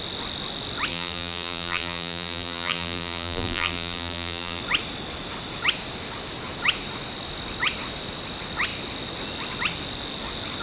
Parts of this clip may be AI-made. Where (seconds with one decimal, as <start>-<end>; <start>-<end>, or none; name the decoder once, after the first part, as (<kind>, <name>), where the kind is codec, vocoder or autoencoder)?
0.9-4.6 (vocoder, BigVGAN v2)